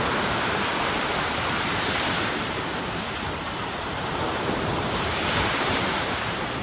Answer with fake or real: fake